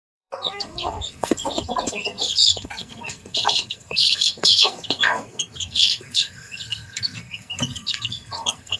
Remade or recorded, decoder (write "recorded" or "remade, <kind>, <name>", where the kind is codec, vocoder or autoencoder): remade, codec, SNAC